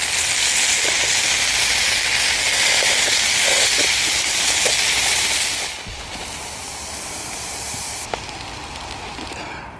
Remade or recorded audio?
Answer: recorded